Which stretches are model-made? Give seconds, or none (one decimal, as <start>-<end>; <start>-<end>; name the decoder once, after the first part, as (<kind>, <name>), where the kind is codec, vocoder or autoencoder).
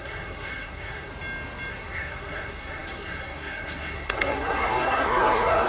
0.0-1.1 (codec, SNAC); 1.7-5.7